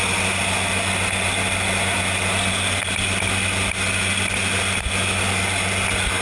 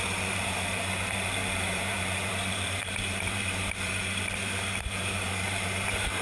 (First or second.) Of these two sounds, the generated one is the second